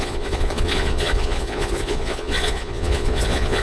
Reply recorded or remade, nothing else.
remade